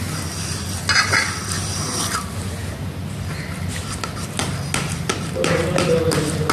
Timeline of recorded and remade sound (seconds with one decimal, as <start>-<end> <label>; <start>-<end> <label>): 0.0-2.6 recorded; 2.6-3.8 remade; 3.8-6.5 recorded